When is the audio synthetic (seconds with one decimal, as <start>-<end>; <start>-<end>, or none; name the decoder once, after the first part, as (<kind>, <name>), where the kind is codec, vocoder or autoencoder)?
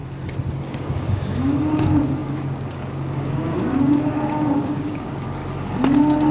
0.6-5.4 (codec, DAC)